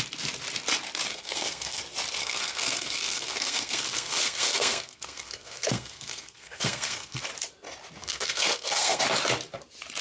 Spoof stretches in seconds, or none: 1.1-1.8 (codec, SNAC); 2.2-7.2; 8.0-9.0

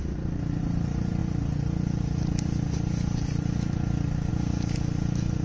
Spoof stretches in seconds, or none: none

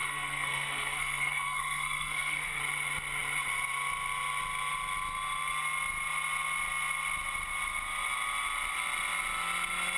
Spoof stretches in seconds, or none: 0.0-2.6 (codec, SNAC)

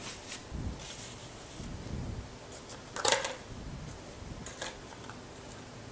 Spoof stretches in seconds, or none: none

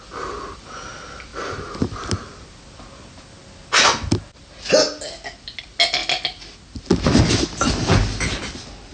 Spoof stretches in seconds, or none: none

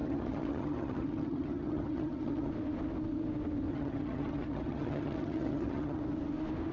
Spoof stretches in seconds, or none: 0.0-2.5 (vocoder, HiFi-GAN); 3.7-6.0

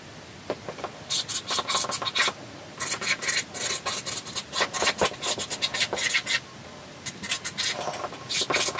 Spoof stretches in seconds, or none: none

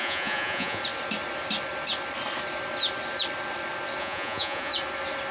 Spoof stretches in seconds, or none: 0.0-0.8 (vocoder, Vocos); 4.0-4.7